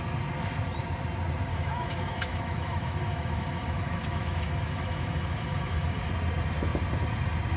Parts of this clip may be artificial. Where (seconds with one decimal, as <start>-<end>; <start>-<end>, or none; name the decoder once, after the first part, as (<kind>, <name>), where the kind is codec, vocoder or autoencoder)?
1.5-6.1 (autoencoder, DAC-VAE)